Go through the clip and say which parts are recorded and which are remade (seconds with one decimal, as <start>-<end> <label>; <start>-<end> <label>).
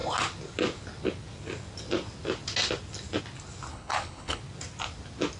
0.0-3.7 recorded; 3.7-4.4 remade; 4.4-5.4 recorded